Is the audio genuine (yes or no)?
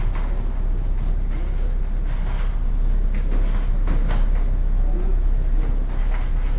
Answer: yes